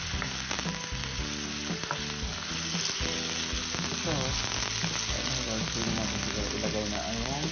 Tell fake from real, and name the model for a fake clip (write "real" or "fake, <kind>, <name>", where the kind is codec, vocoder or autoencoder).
real